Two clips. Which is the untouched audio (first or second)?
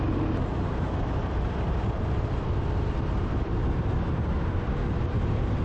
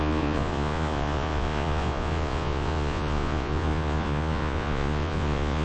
first